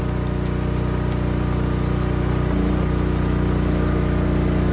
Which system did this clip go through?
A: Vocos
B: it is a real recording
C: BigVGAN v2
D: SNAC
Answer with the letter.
B